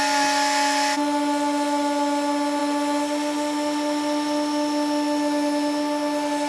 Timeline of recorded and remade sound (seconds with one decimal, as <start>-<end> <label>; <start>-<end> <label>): 0.0-6.5 recorded